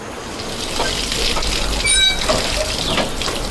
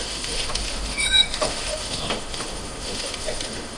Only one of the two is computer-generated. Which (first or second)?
second